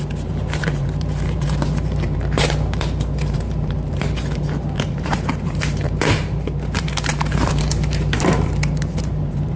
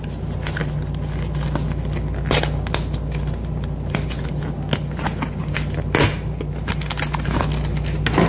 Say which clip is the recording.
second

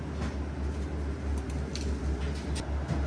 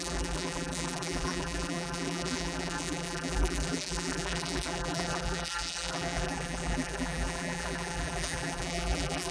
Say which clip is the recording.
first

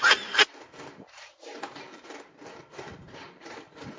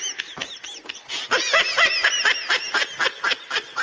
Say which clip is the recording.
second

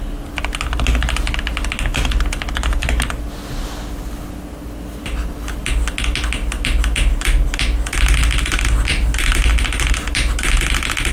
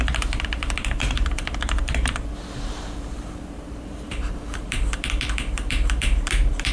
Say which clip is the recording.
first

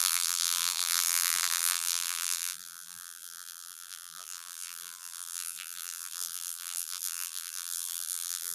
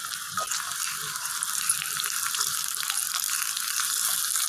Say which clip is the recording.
second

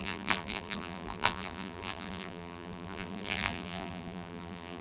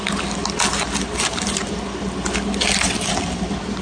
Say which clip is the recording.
second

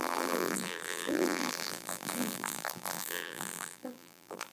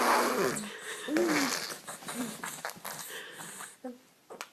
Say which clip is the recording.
second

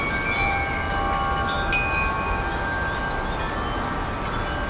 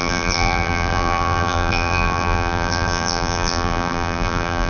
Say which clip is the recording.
first